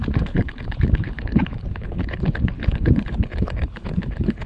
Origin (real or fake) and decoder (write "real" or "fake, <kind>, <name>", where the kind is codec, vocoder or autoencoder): fake, codec, HILCodec